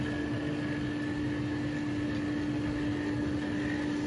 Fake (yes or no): no